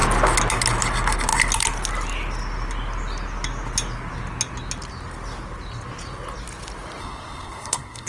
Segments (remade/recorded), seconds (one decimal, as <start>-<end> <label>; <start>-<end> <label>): 0.0-7.0 recorded; 7.0-8.1 remade